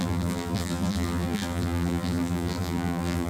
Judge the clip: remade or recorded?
remade